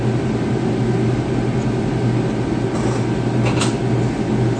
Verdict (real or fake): real